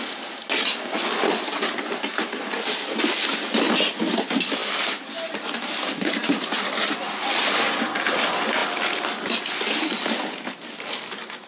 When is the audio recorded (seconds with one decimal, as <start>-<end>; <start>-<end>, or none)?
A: 0.0-11.5